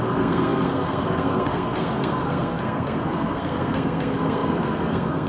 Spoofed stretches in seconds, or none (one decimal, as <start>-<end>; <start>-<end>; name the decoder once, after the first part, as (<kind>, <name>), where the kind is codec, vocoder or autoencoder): 0.0-5.3 (codec, SNAC)